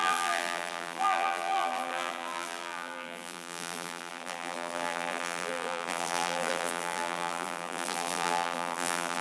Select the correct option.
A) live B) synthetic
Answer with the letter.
B